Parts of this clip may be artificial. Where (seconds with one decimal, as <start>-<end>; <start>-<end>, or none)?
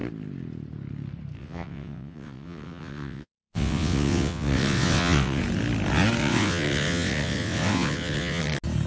1.4-5.4; 6.2-8.4